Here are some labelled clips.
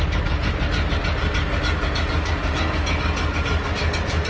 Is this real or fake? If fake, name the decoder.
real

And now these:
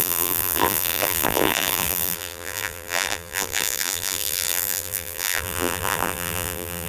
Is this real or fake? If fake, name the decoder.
fake, vocoder, BigVGAN v2